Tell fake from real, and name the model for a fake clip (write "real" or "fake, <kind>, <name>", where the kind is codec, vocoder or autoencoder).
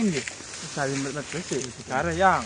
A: real